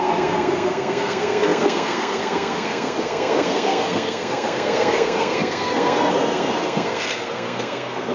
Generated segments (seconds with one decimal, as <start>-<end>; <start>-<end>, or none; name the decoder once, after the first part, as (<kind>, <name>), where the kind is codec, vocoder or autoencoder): 0.0-8.1 (codec, SNAC)